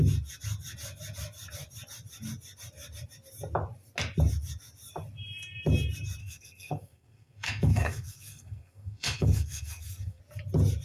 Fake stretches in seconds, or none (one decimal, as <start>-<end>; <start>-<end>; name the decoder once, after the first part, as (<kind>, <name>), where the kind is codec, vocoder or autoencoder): 6.2-10.2 (codec, SNAC)